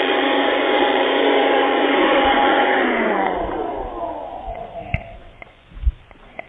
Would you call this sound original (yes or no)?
no